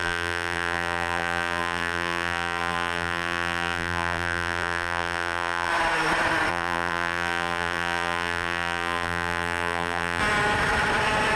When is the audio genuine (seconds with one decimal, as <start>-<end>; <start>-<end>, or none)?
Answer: 5.7-6.5; 10.2-11.4